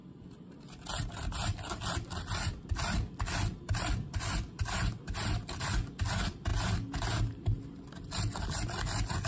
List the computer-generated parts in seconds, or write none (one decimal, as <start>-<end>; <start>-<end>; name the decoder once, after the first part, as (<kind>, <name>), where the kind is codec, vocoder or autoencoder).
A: none